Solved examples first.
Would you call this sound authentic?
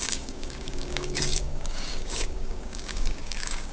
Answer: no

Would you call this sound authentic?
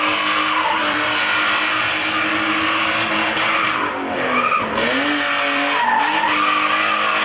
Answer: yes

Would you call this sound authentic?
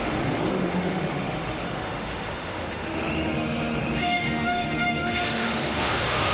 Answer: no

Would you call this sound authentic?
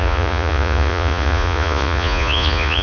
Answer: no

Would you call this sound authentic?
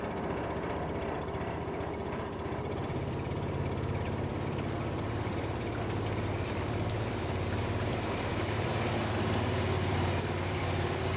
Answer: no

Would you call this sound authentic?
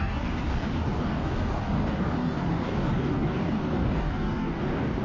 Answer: no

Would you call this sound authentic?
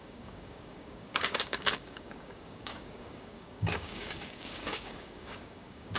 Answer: no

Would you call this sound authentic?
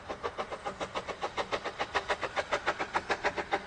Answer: yes